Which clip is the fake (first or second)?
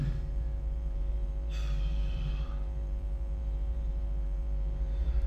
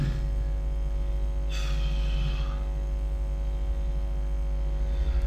first